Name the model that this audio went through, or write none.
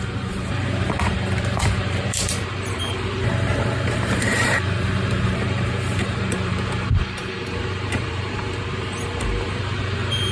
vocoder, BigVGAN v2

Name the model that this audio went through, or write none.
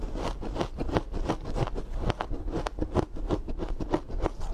none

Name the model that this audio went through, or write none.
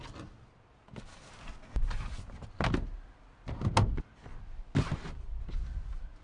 none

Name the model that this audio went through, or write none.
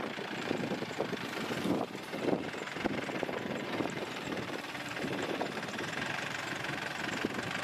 vocoder, BigVGAN v2